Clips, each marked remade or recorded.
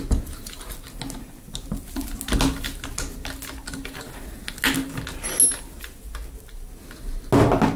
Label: recorded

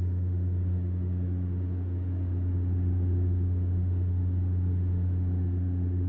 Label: remade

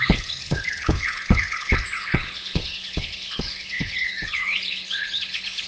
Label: remade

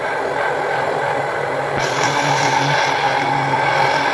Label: recorded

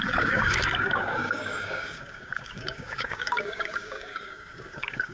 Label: remade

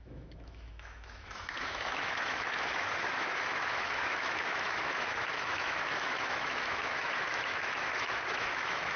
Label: remade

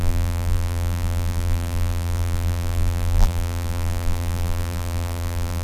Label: remade